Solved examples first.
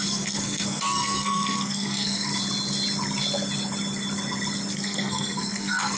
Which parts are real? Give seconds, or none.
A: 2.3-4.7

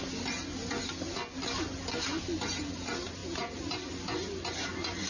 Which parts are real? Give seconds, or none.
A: 0.0-5.1

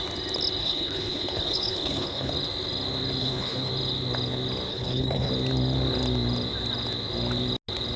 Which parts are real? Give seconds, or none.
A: 0.0-0.6; 2.3-3.2; 3.7-4.7; 5.3-8.0